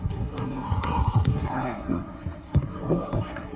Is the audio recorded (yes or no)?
no